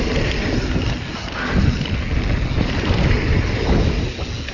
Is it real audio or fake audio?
real